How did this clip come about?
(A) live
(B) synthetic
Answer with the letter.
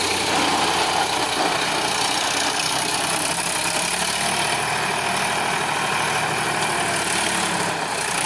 A